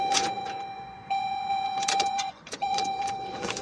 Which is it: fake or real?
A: fake